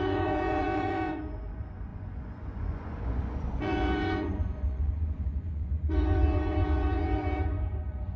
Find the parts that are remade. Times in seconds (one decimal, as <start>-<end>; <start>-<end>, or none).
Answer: 0.0-8.2